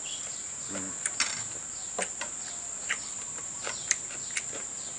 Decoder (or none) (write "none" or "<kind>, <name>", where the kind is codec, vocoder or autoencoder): none